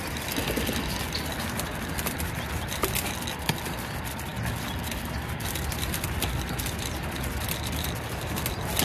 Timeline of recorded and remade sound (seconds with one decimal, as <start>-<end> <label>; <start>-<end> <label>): 0.0-8.8 recorded